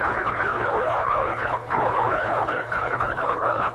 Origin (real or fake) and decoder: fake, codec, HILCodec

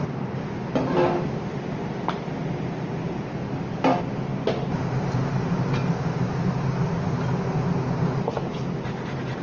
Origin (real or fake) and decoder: real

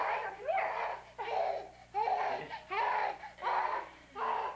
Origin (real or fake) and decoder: real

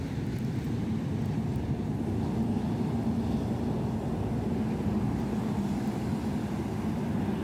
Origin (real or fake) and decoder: real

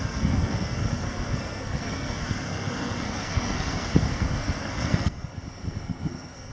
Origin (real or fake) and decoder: fake, codec, SNAC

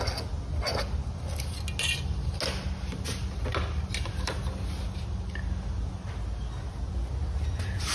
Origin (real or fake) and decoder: real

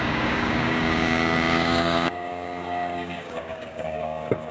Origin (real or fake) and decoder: fake, codec, DAC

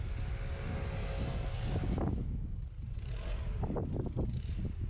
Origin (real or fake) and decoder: real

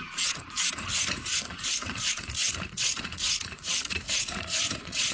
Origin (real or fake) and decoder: fake, vocoder, Vocos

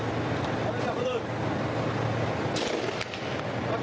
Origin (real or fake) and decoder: real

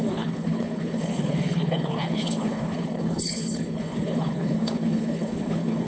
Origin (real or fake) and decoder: fake, codec, HILCodec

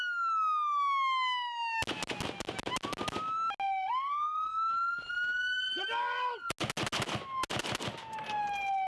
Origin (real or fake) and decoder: real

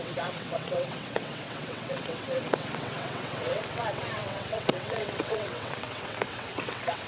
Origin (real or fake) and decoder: fake, vocoder, WaveNeXt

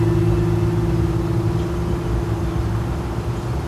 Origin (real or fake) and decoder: real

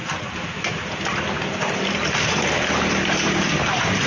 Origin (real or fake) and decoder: fake, vocoder, BigVGAN v2